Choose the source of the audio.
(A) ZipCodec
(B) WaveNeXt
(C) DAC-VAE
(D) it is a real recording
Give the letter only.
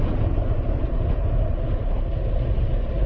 D